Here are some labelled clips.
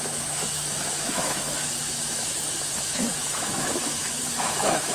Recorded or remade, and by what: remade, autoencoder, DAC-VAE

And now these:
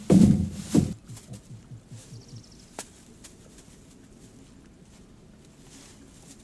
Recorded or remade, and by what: recorded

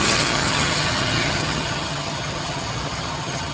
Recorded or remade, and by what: remade, vocoder, HiFi-GAN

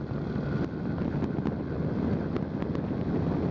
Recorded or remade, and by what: recorded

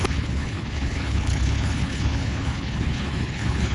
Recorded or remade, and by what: remade, codec, HILCodec